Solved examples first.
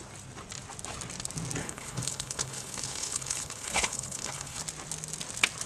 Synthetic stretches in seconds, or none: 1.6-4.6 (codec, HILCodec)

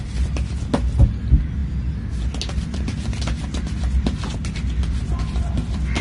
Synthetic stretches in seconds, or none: none

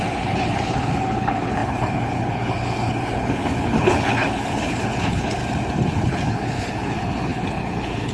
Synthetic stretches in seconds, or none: 0.0-5.4 (codec, HILCodec); 5.9-8.1

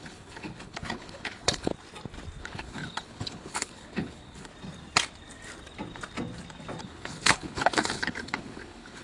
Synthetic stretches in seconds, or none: 0.0-1.7 (codec, HILCodec); 2.4-4.5; 6.8-9.0

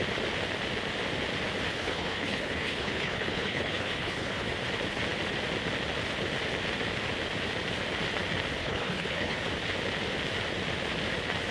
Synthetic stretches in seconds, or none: 1.7-4.5 (codec, HILCodec); 8.6-9.4

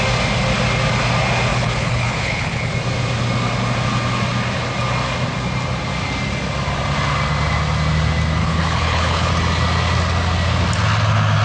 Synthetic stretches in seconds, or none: 1.5-2.7 (codec, HILCodec); 8.4-9.3